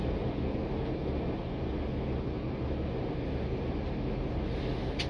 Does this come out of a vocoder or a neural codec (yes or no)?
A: no